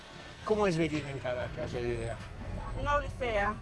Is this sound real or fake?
fake